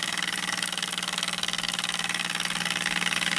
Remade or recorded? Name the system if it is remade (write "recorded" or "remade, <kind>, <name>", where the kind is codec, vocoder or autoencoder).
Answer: remade, codec, DAC